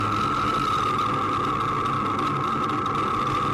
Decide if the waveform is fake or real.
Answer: real